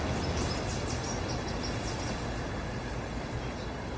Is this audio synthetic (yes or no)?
no